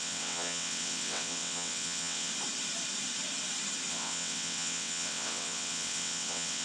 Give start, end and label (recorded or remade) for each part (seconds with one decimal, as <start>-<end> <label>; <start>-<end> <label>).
0.0-2.3 remade; 2.3-3.9 recorded; 3.9-6.6 remade